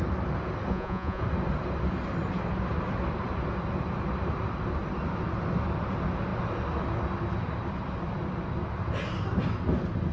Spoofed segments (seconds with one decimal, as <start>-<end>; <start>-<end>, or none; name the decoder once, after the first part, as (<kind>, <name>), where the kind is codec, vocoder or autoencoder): 0.7-1.2 (vocoder, Vocos)